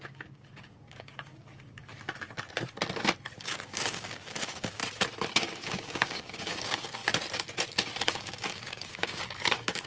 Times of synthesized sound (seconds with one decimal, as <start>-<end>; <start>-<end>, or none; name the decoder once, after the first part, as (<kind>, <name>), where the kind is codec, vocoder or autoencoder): 0.0-1.9 (codec, DAC); 3.4-4.8; 5.4-7.0; 8.0-9.9